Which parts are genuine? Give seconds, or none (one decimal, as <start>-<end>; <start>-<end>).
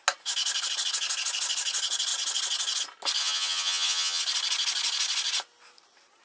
0.0-3.2; 4.2-6.2